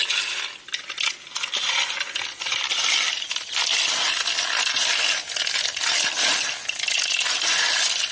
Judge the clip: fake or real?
real